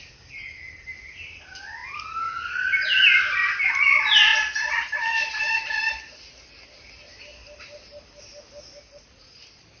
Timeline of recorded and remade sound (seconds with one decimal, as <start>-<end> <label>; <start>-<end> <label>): 0.0-9.8 recorded